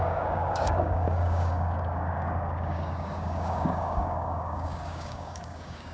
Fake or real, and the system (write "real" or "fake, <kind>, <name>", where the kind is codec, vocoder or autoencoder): fake, codec, DAC